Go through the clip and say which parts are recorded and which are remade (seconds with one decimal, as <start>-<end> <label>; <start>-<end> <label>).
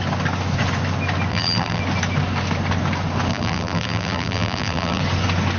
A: 0.0-1.3 recorded; 1.3-1.8 remade; 1.8-3.3 recorded; 3.3-5.0 remade; 5.0-5.6 recorded